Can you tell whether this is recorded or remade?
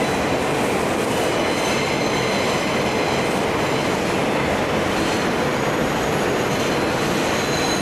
recorded